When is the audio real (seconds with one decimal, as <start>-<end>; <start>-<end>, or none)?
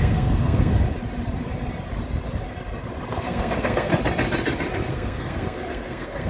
0.7-3.1; 3.9-4.9